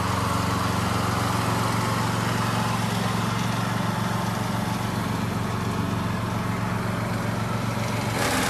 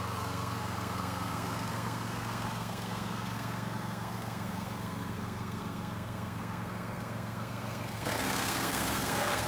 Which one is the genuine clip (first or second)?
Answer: first